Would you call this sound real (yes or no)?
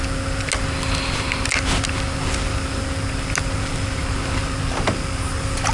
yes